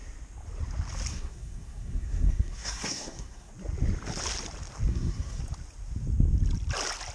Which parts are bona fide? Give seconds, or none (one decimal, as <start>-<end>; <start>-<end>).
0.0-1.1; 3.5-4.9; 5.4-7.1